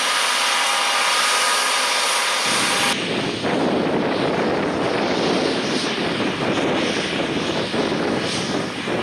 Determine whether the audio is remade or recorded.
recorded